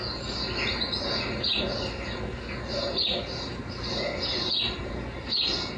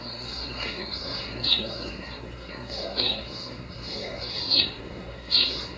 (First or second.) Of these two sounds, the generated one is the second